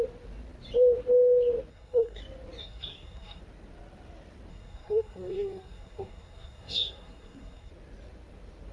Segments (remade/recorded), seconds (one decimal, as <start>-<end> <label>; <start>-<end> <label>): 0.0-1.7 recorded; 1.7-2.2 remade; 2.2-2.6 recorded; 2.6-3.4 remade; 3.4-4.5 recorded; 4.5-7.7 remade; 7.7-8.7 recorded